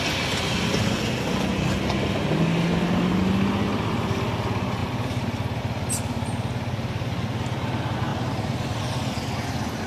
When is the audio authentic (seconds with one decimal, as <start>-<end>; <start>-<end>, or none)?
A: 0.0-4.8; 5.6-8.1; 8.8-9.9